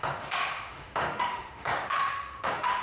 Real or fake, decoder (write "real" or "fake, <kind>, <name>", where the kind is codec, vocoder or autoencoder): fake, autoencoder, DAC-VAE